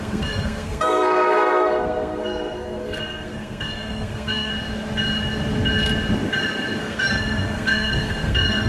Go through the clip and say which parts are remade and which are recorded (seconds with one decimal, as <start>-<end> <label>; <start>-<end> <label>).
0.0-4.5 remade; 4.5-6.8 recorded; 6.8-8.7 remade